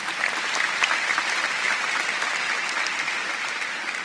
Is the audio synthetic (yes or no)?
no